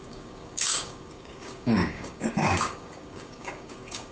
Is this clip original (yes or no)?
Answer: no